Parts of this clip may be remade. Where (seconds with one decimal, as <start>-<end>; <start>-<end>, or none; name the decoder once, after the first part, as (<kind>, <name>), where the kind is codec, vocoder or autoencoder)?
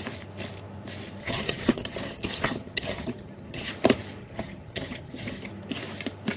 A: 1.2-3.7 (vocoder, HiFi-GAN); 4.2-5.5